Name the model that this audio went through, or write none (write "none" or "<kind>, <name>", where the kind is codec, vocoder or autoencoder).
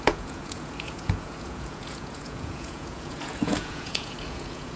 vocoder, Vocos